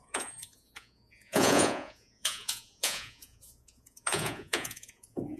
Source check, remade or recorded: remade